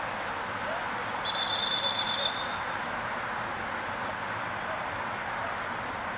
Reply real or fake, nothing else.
real